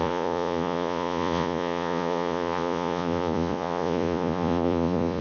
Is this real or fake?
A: fake